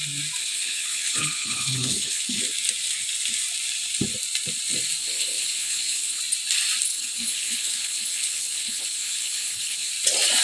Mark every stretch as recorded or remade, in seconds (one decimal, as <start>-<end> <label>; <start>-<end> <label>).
0.0-0.4 recorded; 0.4-2.4 remade; 2.4-5.0 recorded; 5.0-6.2 remade; 6.2-6.9 recorded; 6.9-9.9 remade; 9.9-10.4 recorded